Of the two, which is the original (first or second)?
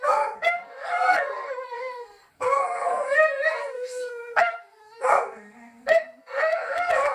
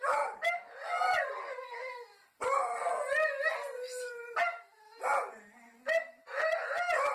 second